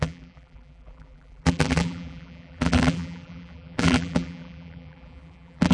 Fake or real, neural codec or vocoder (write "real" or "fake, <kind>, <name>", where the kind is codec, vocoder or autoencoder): fake, vocoder, BigVGAN v2